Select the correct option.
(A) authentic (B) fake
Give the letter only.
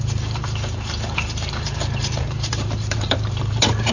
B